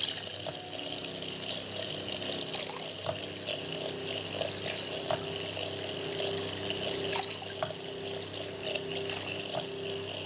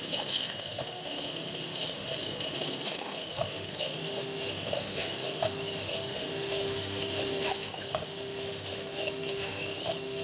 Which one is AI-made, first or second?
second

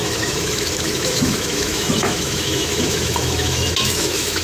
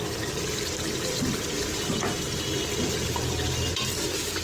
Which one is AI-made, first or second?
first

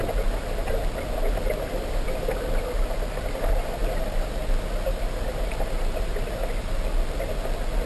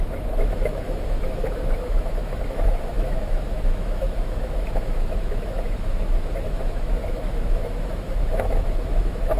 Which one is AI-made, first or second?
second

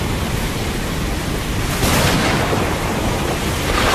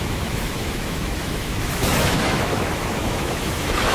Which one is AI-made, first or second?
second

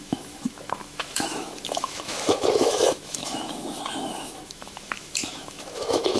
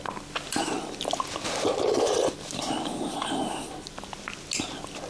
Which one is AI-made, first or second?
first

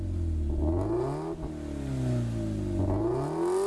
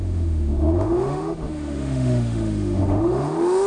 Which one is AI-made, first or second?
second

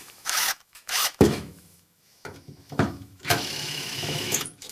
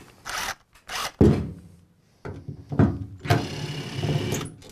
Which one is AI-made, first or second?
first